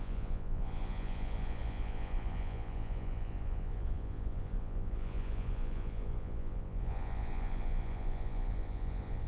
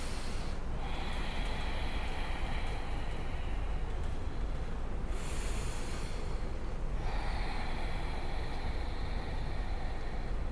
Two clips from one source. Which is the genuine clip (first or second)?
second